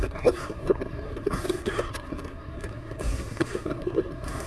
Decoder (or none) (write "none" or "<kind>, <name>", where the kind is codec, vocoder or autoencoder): codec, SNAC